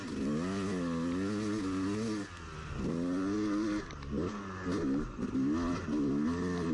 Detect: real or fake real